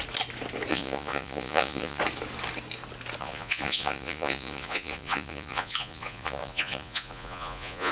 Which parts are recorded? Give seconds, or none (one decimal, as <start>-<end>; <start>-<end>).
0.0-0.7; 2.0-3.2